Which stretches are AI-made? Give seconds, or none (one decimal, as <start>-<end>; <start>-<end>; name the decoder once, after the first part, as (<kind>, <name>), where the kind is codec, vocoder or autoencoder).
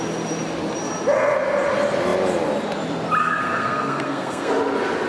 3.2-4.5 (codec, SNAC)